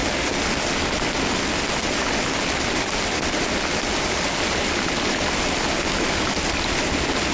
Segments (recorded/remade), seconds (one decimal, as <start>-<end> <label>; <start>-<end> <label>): 0.0-7.3 recorded